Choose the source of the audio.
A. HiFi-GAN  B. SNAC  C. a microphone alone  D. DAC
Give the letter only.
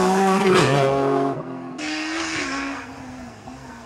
B